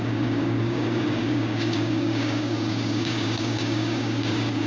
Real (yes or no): no